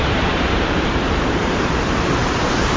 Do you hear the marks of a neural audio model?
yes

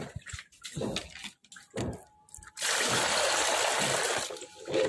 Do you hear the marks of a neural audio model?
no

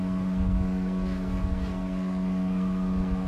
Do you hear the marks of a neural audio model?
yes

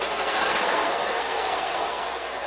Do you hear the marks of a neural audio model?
yes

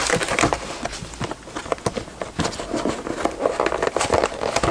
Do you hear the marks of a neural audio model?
no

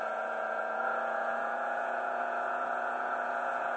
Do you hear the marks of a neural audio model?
yes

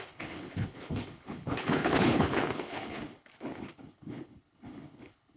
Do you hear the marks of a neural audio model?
yes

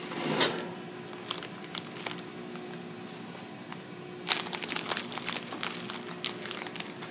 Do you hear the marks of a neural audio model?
no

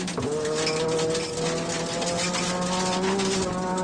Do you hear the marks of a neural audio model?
no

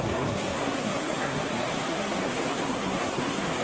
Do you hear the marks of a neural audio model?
yes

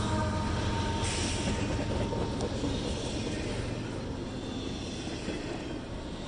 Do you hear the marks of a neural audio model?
no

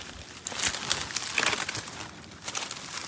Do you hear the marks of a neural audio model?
no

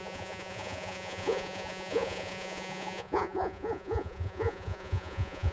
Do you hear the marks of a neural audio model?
yes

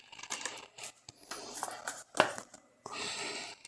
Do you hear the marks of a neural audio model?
no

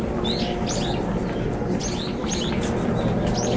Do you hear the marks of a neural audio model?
no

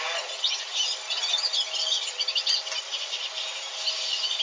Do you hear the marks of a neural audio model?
no